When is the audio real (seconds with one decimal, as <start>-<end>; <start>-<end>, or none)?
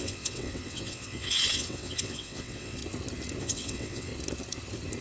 2.8-3.4; 4.1-5.0